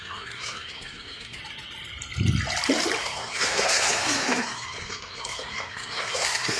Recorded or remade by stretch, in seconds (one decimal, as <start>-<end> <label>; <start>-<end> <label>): 0.0-1.4 remade; 1.4-3.0 recorded; 3.0-6.6 remade